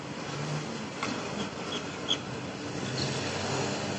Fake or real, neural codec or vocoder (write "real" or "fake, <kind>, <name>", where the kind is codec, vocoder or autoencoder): real